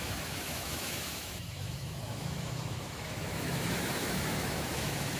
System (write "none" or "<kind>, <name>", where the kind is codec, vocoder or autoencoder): autoencoder, DAC-VAE